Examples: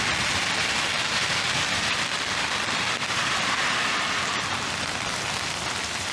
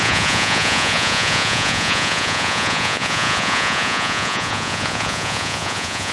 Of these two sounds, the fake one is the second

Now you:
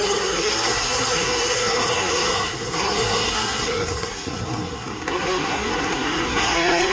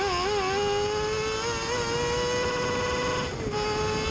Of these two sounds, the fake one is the first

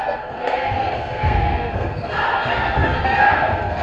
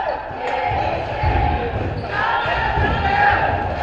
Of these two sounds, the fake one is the first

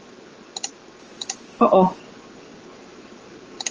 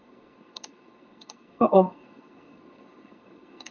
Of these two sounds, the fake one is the second